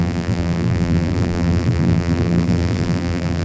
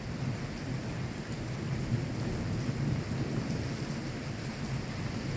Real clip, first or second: second